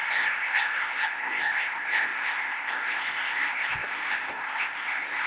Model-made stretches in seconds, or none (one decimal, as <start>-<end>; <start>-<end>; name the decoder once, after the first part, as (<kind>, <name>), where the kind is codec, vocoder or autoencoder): 0.0-5.3 (codec, ZipCodec)